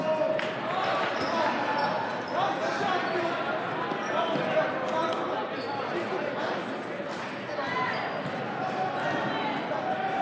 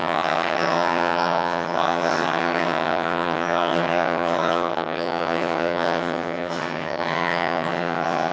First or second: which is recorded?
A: first